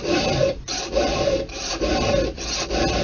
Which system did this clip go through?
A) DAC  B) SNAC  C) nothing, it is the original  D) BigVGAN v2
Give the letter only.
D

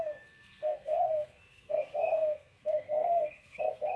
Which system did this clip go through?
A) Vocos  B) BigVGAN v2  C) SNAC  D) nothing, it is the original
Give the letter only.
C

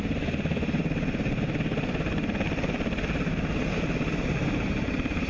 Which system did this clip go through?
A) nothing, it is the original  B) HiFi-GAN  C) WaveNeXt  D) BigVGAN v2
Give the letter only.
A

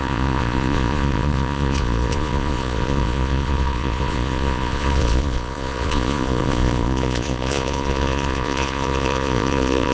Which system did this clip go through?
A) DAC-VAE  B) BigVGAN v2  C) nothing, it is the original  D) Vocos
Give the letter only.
D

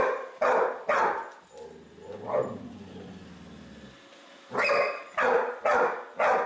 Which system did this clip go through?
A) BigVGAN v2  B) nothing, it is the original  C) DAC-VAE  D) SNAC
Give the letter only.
B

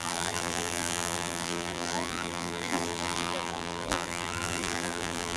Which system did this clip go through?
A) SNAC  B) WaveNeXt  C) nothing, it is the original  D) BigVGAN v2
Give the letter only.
D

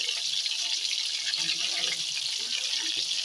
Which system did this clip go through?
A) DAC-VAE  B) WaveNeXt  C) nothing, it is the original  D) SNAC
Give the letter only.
C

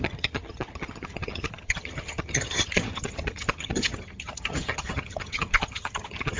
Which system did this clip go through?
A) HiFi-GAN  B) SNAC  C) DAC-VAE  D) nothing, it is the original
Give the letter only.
A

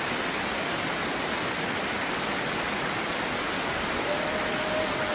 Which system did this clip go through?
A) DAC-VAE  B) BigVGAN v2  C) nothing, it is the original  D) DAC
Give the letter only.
C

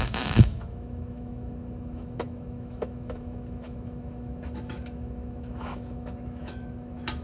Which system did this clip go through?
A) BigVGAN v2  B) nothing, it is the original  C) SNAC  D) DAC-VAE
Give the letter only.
D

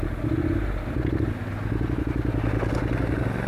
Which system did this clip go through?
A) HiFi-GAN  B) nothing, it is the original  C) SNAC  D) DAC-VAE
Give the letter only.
B